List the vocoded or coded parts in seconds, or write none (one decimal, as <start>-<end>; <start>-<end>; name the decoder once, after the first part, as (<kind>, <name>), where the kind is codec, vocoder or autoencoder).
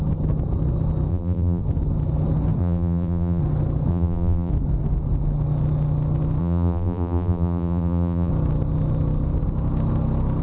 1.1-1.6 (vocoder, BigVGAN v2); 2.6-3.4; 3.9-4.5; 6.4-8.3